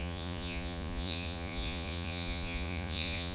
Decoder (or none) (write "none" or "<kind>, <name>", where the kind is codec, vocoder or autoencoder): vocoder, Vocos